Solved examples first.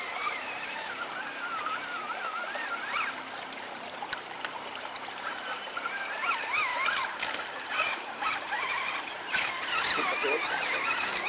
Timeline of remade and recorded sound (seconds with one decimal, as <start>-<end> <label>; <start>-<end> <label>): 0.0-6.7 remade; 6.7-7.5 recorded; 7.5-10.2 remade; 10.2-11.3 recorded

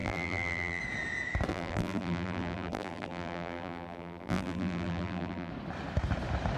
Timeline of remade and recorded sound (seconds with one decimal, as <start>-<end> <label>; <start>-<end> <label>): 0.0-0.8 remade; 0.8-1.5 recorded; 1.5-5.5 remade; 5.5-6.6 recorded

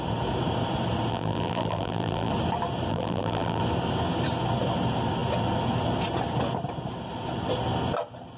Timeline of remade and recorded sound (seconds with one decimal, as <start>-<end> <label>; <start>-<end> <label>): 0.0-1.1 recorded; 1.1-2.3 remade; 2.3-2.9 recorded; 2.9-3.6 remade; 3.6-8.4 recorded

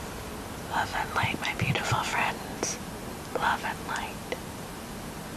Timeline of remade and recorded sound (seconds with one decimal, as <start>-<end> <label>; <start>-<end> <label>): 0.0-5.4 recorded